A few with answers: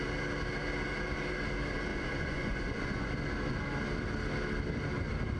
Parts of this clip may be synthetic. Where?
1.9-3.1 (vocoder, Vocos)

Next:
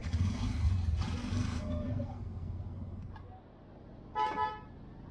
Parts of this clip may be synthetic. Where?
0.0-0.7 (codec, SNAC); 1.2-3.1

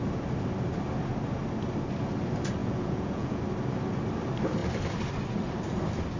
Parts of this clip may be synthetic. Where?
2.6-3.4 (vocoder, Vocos)

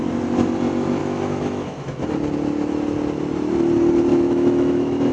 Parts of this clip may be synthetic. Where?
1.0-2.0 (autoencoder, DAC-VAE); 4.1-5.1

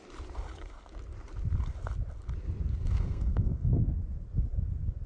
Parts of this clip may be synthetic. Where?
2.8-3.8 (codec, SNAC)

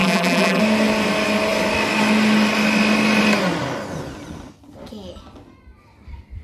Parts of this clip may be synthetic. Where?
0.0-0.6 (vocoder, BigVGAN v2)

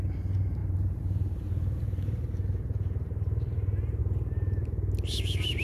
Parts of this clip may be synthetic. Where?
0.6-4.0 (vocoder, BigVGAN v2)

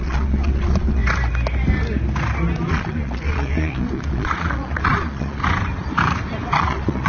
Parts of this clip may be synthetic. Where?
0.0-1.0 (vocoder, Vocos); 2.7-5.4; 6.6-7.1